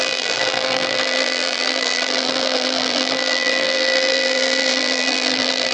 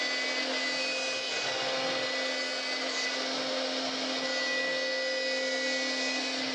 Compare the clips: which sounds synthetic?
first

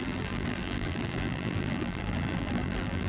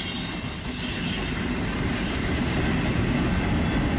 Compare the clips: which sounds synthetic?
first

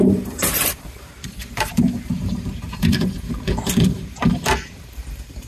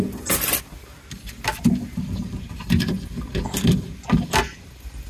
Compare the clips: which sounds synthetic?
first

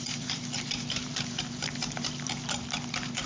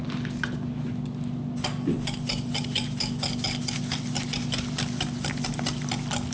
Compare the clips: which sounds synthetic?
first